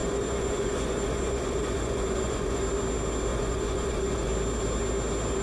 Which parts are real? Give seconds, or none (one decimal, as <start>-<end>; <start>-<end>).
2.6-3.3; 4.3-5.4